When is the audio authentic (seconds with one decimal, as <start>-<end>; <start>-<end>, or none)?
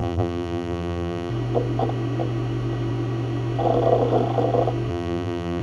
1.3-4.9